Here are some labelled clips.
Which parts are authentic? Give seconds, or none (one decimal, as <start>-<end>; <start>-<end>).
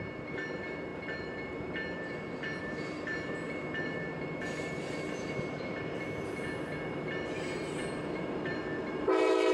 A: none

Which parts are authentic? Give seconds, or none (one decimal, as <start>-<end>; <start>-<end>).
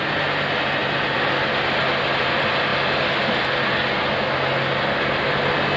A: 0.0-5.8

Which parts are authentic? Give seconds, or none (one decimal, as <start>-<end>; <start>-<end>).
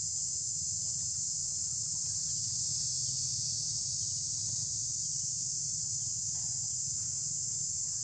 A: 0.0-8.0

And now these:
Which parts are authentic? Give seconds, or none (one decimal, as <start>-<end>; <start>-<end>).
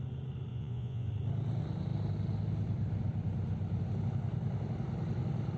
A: 0.0-0.5; 1.1-5.6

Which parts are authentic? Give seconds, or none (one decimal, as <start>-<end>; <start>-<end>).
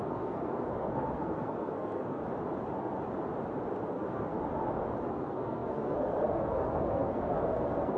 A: 2.2-3.9; 4.3-5.1